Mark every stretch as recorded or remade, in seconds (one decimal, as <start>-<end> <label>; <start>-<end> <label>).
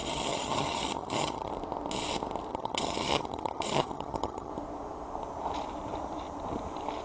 0.0-1.5 remade; 1.5-2.5 recorded; 2.5-4.5 remade; 4.5-7.0 recorded